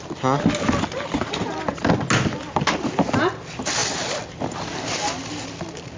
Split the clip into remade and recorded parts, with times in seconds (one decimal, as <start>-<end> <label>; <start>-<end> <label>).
0.0-6.0 recorded